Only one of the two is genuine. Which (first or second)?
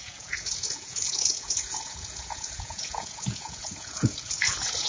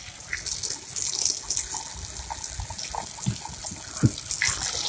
second